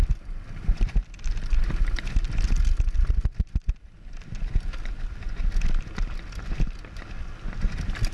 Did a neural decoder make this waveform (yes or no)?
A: no